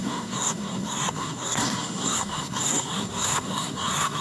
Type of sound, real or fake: fake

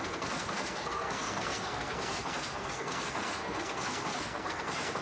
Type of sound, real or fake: fake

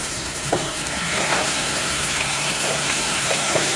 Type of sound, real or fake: fake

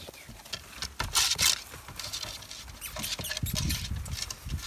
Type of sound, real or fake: real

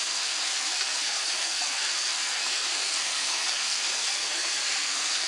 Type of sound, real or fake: fake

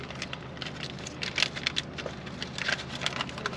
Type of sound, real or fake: real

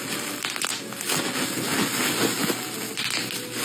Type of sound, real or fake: real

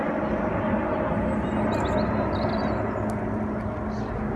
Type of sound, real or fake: real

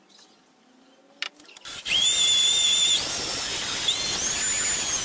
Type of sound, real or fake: real